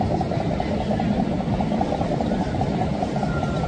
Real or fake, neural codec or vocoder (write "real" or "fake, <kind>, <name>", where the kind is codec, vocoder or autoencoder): real